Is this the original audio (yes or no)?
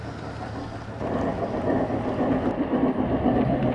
yes